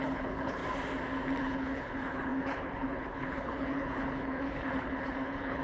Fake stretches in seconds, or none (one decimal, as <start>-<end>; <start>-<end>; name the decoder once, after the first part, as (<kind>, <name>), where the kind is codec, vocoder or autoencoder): 0.0-0.6 (codec, HILCodec); 1.4-5.6